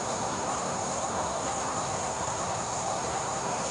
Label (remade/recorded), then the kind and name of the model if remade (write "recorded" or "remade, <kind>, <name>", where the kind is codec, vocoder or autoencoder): remade, codec, SNAC